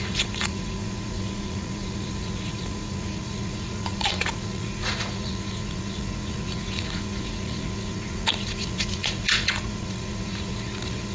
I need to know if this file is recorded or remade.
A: remade